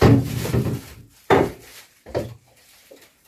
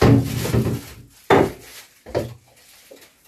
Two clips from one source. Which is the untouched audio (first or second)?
second